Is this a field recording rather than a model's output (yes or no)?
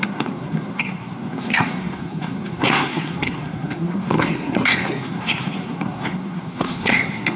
no